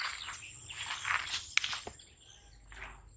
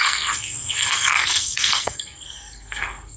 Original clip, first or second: first